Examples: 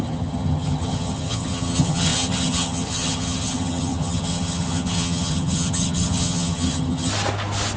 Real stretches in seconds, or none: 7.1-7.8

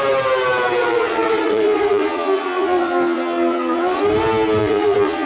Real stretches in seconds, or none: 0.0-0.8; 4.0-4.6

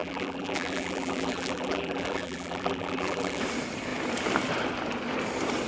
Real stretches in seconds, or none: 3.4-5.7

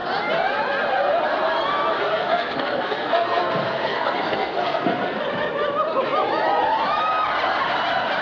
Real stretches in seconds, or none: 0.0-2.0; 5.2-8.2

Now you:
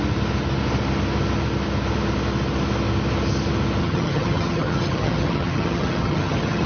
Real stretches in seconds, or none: 0.0-3.8

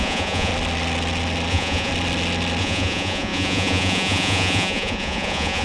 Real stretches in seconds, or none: 0.5-1.5; 1.9-2.6